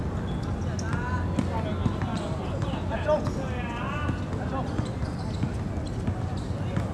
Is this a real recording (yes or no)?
yes